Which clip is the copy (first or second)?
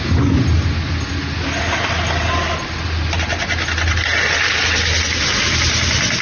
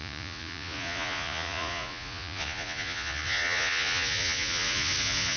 second